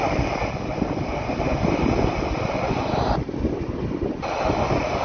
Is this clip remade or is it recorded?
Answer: recorded